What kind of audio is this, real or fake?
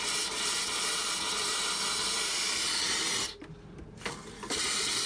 real